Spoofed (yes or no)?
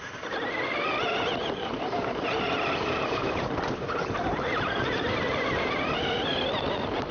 yes